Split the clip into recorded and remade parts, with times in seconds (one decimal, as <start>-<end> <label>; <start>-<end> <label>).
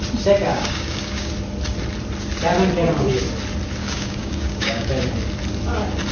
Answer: 0.0-0.5 recorded; 0.5-1.3 remade; 1.3-3.8 recorded; 3.8-4.9 remade; 4.9-6.1 recorded